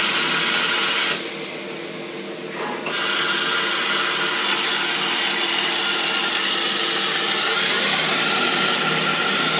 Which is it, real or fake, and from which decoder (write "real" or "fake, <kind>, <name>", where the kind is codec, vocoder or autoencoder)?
real